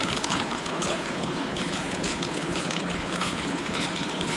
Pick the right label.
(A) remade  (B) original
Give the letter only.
A